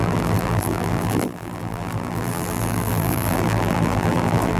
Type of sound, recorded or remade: remade